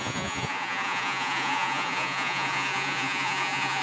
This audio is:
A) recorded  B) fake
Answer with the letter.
B